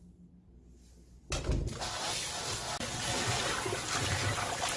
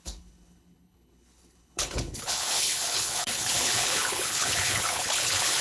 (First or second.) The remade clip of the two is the second